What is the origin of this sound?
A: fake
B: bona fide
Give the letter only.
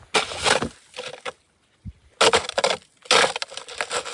B